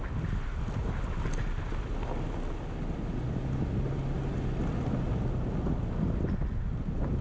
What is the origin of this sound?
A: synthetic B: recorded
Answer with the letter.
B